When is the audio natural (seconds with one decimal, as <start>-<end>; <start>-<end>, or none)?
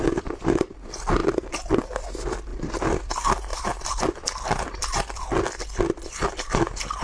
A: 0.0-1.2; 1.8-2.5; 3.1-3.5; 6.3-7.0